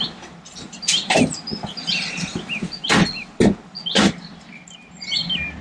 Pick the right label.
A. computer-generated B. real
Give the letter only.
B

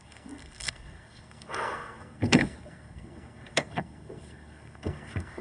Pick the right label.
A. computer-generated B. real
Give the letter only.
A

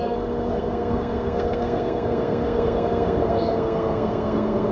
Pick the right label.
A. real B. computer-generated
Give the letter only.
B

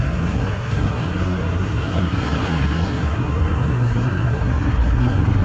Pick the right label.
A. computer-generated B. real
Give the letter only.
A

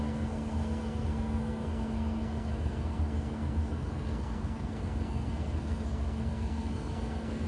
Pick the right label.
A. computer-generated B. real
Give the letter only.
A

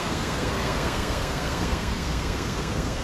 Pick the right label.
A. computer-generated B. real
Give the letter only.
A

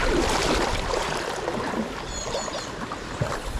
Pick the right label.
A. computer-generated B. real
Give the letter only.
B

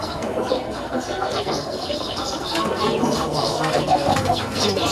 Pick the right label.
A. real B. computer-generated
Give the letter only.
B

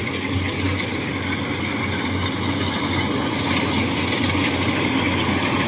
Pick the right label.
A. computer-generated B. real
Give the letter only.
B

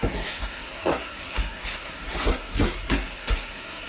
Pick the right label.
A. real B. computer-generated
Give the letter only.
B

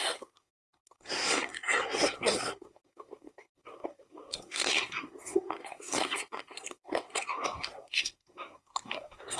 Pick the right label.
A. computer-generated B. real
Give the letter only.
A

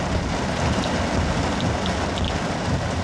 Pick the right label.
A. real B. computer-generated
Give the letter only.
A